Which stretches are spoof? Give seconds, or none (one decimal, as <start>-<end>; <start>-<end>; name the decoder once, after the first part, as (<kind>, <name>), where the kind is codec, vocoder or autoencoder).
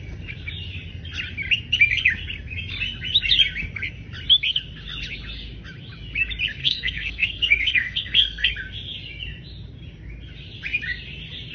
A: 6.6-8.5 (codec, SNAC)